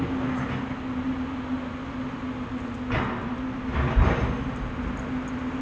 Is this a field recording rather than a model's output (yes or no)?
yes